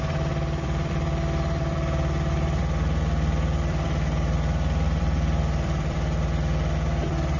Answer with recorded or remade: remade